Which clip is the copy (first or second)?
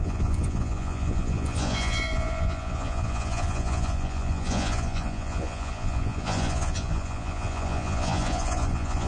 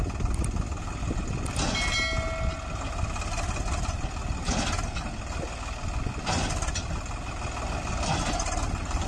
first